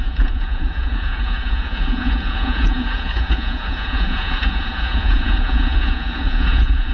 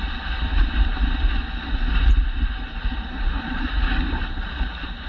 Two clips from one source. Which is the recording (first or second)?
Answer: second